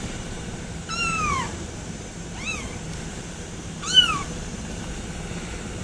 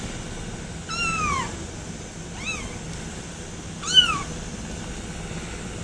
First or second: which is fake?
first